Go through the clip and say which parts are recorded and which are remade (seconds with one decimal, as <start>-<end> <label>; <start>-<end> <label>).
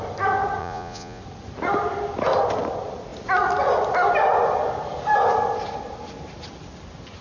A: 0.0-0.6 recorded; 0.6-1.2 remade; 1.2-7.2 recorded